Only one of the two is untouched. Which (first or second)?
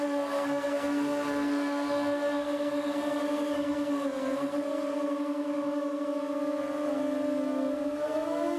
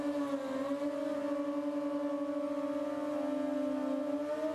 second